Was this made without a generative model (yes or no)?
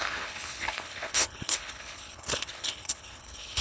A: no